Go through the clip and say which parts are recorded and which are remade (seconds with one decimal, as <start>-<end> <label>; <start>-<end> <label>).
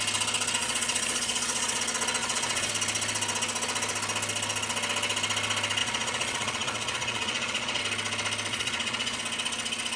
0.0-0.6 recorded; 0.6-1.8 remade; 1.8-2.2 recorded; 2.2-2.7 remade; 2.7-5.8 recorded; 5.8-7.8 remade; 7.8-8.5 recorded; 8.5-9.2 remade; 9.2-10.0 recorded